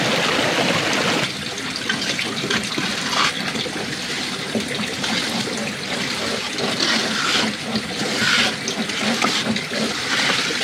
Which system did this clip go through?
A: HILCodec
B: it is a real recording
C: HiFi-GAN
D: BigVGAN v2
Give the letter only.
B